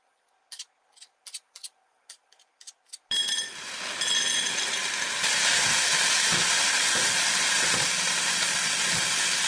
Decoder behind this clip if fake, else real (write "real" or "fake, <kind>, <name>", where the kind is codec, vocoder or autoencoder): real